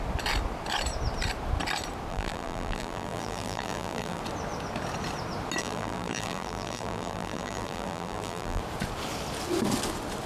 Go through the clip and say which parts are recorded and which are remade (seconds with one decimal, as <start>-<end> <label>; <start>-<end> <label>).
0.0-2.1 recorded; 2.1-4.2 remade; 4.2-5.6 recorded; 5.6-8.6 remade; 8.6-10.3 recorded